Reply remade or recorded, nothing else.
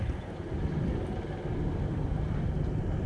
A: recorded